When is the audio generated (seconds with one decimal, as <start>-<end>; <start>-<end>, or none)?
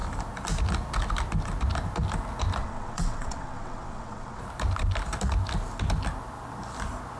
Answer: 2.6-4.4